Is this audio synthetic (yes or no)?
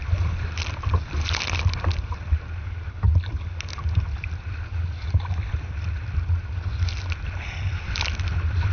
no